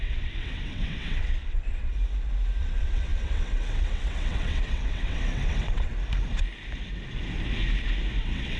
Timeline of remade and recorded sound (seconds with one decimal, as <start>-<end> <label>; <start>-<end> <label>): 0.0-1.9 remade; 1.9-2.6 recorded; 2.6-5.9 remade; 5.9-8.2 recorded; 8.2-8.6 remade